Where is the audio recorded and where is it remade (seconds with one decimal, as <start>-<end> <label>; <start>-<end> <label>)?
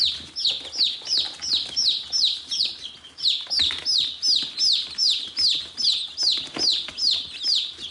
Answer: 0.0-7.9 recorded